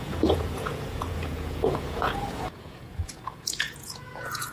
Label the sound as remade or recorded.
remade